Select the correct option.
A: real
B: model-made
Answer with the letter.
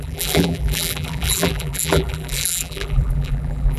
B